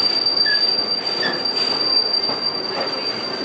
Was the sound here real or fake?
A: real